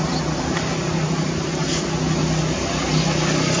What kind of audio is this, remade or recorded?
recorded